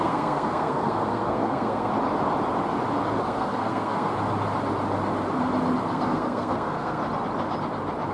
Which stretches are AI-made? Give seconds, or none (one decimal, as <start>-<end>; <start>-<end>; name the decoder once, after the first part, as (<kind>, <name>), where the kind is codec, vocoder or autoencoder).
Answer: 0.0-1.9 (codec, SNAC); 3.2-4.1; 5.9-7.0